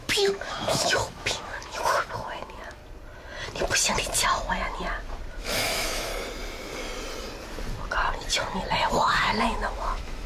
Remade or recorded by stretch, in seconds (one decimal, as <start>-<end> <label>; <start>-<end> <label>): 0.0-2.8 remade; 2.8-5.3 recorded; 5.3-6.1 remade; 6.1-8.9 recorded; 8.9-10.3 remade